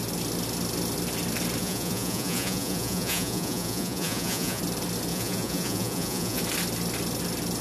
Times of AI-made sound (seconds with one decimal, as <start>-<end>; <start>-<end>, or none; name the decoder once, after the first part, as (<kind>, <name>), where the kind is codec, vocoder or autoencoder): 1.6-4.6 (vocoder, Vocos); 5.1-6.4